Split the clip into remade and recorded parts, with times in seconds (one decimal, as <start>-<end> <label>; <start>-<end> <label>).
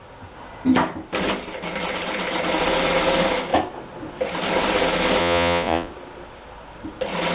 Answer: 0.0-5.2 recorded; 5.2-5.9 remade; 5.9-7.3 recorded